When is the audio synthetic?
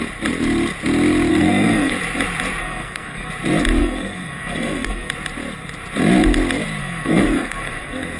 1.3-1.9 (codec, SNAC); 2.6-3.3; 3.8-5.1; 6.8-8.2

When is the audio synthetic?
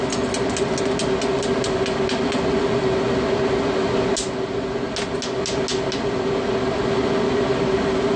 none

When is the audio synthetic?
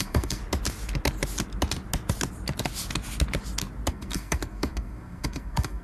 0.0-0.4 (codec, SNAC); 3.9-5.8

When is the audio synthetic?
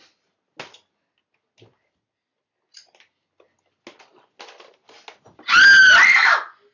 none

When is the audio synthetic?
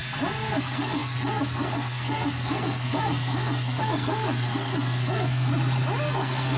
0.5-5.5 (codec, SNAC); 6.1-6.6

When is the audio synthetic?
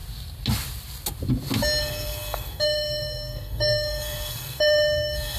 1.8-5.4 (codec, SNAC)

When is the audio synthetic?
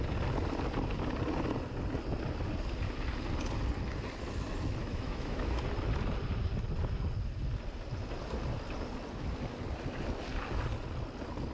4.8-5.6 (autoencoder, DAC-VAE)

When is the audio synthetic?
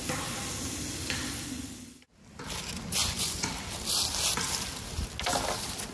3.0-3.5 (vocoder, Vocos)